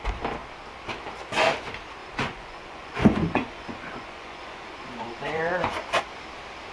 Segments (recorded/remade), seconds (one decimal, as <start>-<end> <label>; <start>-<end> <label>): 0.0-2.0 recorded; 2.0-6.0 remade; 6.0-6.7 recorded